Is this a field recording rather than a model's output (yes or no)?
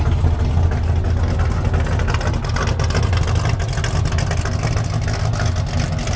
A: yes